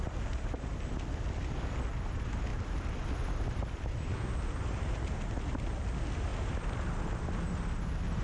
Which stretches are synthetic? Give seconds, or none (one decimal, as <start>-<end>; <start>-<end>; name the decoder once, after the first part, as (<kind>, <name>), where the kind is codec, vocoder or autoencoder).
2.5-5.2 (vocoder, BigVGAN v2)